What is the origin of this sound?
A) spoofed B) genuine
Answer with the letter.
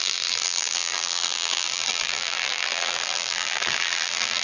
A